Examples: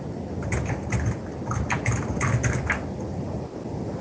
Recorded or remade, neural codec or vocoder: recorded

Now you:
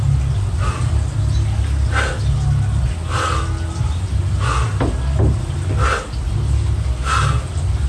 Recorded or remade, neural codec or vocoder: recorded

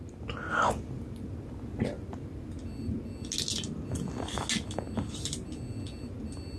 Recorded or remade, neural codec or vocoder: recorded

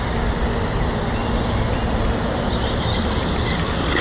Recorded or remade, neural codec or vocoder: recorded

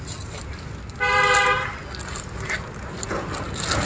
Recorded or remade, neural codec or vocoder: recorded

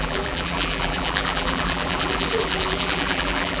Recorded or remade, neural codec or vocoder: remade, vocoder, BigVGAN v2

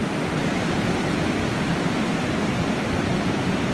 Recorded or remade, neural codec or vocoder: recorded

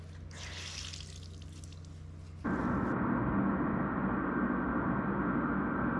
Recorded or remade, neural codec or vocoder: recorded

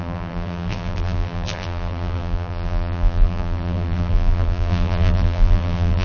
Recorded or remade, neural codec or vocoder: remade, vocoder, BigVGAN v2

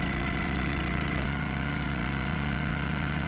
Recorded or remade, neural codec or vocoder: remade, vocoder, WaveNeXt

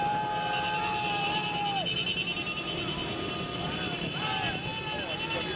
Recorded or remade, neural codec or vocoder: recorded